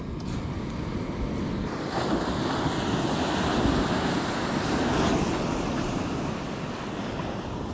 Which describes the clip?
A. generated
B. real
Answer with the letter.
B